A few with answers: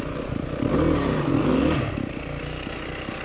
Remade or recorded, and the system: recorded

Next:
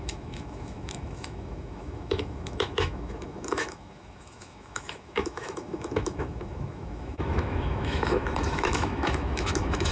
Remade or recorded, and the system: remade, autoencoder, DAC-VAE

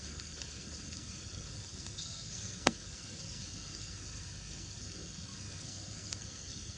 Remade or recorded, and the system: remade, codec, SNAC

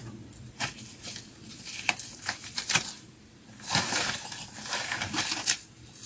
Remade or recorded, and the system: remade, vocoder, BigVGAN v2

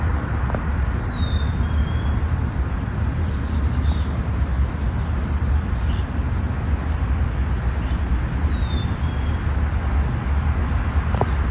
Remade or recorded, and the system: recorded